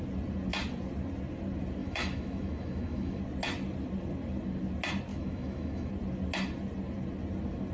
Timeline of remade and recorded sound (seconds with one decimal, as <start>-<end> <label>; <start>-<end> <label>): 0.0-1.8 recorded; 1.8-3.2 remade; 3.2-5.1 recorded; 5.1-5.9 remade; 5.9-7.7 recorded